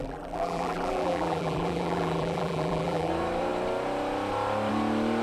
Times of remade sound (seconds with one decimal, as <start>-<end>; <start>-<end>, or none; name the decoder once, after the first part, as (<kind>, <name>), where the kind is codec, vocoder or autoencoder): 0.0-3.1 (vocoder, BigVGAN v2)